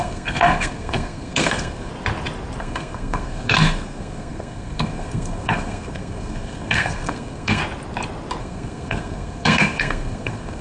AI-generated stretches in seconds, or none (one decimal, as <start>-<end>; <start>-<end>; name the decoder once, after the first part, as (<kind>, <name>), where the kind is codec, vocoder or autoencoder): 0.0-1.9 (codec, SNAC); 2.6-7.6; 8.4-10.6